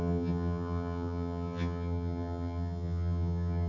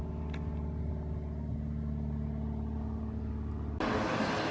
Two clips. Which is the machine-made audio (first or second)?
first